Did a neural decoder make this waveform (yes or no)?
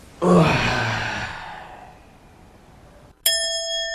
no